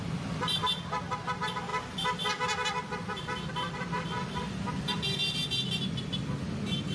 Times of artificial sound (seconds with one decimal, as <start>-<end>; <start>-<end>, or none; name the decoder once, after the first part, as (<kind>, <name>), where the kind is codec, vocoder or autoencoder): none